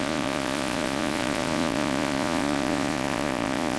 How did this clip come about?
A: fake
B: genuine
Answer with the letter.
A